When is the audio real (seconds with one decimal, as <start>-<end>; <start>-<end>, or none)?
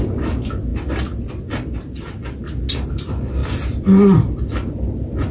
0.0-5.3